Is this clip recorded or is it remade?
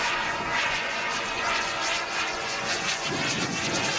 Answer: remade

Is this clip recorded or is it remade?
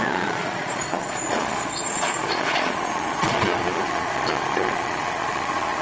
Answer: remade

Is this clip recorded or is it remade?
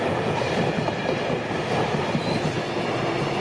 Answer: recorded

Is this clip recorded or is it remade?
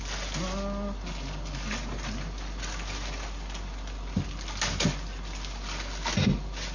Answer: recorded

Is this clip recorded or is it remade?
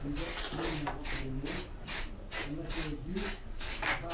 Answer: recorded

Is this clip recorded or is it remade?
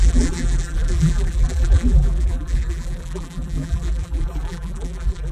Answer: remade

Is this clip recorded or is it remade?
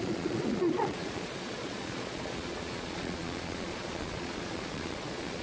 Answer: remade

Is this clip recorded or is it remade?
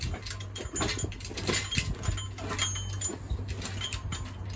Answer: recorded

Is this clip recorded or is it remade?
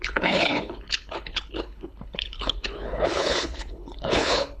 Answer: remade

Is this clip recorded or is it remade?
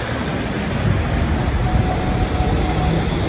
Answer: recorded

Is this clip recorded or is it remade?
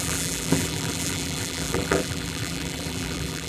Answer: remade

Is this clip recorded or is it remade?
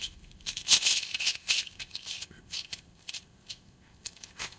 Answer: remade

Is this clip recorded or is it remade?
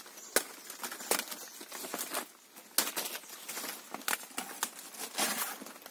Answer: recorded